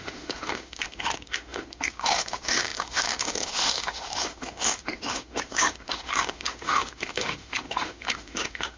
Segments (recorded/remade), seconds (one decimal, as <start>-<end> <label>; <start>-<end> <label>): 0.0-8.8 remade